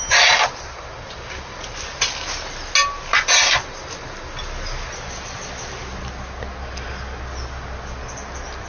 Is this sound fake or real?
real